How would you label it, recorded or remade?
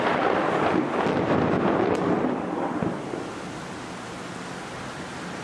recorded